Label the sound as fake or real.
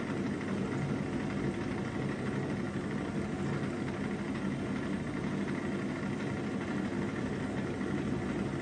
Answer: real